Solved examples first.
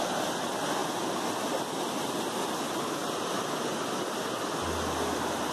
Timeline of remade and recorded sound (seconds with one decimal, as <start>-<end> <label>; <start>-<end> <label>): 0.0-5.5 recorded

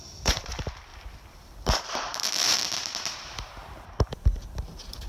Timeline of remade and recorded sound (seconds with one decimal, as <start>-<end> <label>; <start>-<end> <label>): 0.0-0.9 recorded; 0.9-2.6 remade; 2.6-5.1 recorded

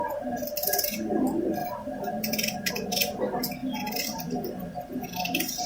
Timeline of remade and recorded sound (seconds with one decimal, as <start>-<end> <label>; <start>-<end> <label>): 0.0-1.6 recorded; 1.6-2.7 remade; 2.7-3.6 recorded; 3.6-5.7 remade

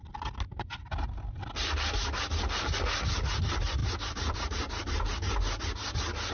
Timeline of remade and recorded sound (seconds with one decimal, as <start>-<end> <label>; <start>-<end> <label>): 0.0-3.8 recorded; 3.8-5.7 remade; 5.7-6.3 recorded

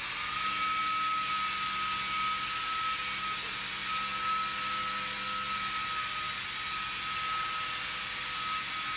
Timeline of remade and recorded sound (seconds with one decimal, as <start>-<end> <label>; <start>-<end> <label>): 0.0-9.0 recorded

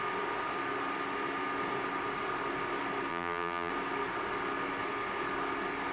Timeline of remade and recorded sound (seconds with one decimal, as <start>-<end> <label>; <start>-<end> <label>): 0.0-3.1 recorded; 3.1-3.7 remade; 3.7-5.9 recorded

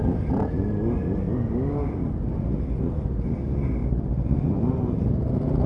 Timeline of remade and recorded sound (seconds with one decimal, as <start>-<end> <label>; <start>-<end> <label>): 0.0-3.8 recorded; 3.8-4.6 remade; 4.6-5.7 recorded

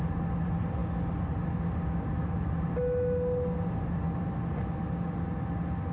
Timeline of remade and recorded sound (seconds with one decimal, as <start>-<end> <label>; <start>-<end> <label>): 0.0-5.9 recorded